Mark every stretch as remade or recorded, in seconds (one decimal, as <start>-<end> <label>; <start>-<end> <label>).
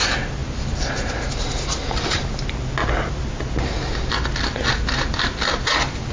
0.0-6.1 recorded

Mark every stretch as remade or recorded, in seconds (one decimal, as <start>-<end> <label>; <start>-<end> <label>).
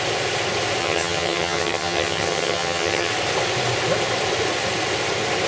0.0-0.8 recorded; 0.8-3.1 remade; 3.1-5.5 recorded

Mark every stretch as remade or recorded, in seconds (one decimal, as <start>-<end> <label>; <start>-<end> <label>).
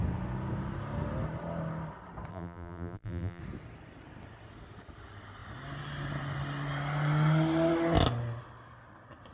0.0-2.3 recorded; 2.3-3.4 remade; 3.4-9.3 recorded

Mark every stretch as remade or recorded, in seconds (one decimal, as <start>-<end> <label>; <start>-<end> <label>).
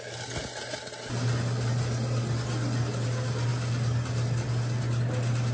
0.0-5.5 recorded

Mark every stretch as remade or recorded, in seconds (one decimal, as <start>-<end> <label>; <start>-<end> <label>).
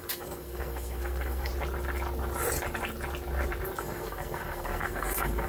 0.0-1.5 remade; 1.5-3.8 recorded; 3.8-5.5 remade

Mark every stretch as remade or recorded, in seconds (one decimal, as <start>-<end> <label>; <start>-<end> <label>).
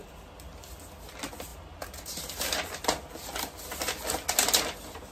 0.0-5.1 recorded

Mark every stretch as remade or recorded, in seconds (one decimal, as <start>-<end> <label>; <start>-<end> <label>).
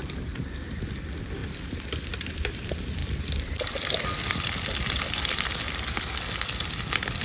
0.0-7.2 remade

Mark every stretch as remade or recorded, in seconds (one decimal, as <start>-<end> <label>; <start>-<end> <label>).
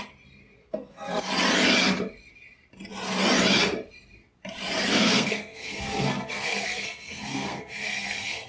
0.0-0.6 recorded; 0.6-1.3 remade; 1.3-4.8 recorded; 4.8-8.5 remade